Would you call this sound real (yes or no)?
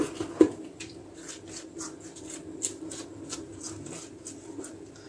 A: yes